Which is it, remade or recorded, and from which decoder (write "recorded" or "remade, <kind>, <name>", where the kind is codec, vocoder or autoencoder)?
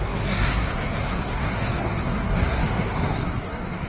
remade, codec, SNAC